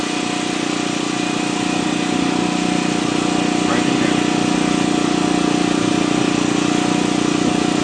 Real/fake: real